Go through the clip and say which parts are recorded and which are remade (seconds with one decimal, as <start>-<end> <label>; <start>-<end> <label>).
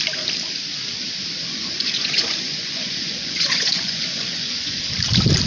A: 0.0-1.5 recorded; 1.5-4.8 remade; 4.8-5.5 recorded